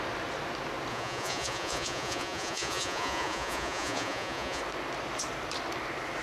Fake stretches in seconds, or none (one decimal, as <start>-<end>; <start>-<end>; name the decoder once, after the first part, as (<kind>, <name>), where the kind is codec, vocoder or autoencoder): 0.9-4.6 (vocoder, Vocos)